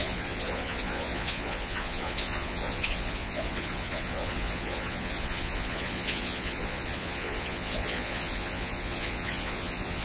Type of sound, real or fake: fake